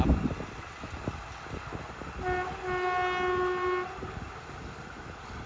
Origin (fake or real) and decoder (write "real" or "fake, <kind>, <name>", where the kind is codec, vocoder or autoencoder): real